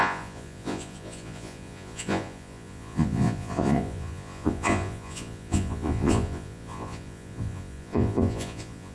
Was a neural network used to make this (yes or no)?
yes